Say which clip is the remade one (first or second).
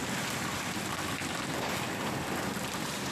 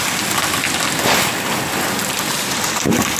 first